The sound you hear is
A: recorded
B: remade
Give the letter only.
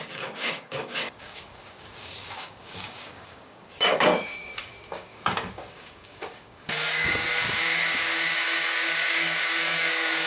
B